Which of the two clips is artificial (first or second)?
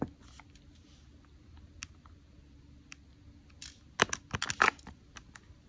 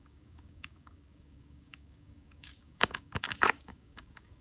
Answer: second